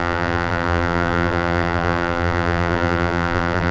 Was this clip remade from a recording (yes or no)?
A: yes